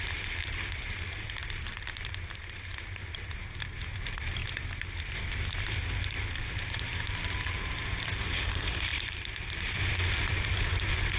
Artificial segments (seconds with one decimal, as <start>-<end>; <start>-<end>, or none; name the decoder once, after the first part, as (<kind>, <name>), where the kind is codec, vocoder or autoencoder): 0.0-2.7 (vocoder, BigVGAN v2); 3.8-4.4; 6.1-11.2